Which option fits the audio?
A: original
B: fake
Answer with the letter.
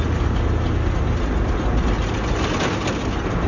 A